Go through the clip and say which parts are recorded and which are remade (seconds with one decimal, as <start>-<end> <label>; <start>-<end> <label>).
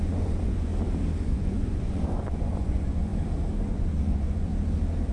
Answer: 0.0-0.7 remade; 0.7-1.2 recorded; 1.2-3.1 remade; 3.1-3.7 recorded; 3.7-4.5 remade; 4.5-5.1 recorded